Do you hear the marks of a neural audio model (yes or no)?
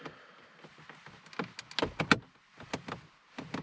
no